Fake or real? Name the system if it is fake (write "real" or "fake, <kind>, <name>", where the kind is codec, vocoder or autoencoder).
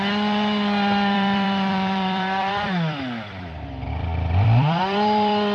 fake, vocoder, BigVGAN v2